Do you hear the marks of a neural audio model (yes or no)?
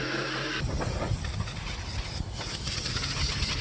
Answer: no